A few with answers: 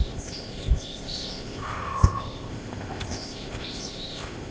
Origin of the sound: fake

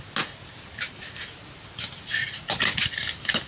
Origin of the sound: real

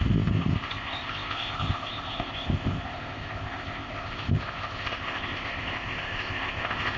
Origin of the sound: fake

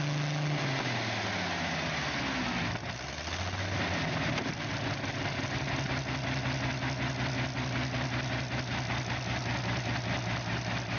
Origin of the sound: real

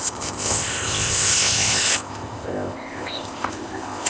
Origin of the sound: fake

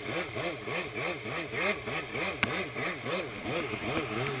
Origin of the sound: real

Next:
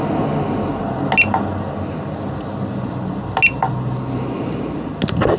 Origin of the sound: real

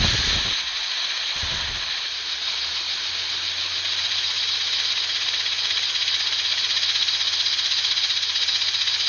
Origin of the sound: real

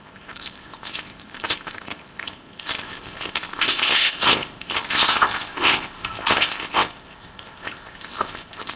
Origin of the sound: fake